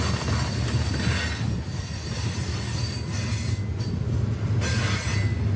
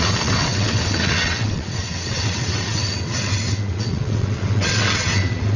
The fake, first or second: second